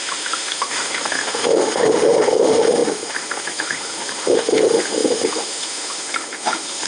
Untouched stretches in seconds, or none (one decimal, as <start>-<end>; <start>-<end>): none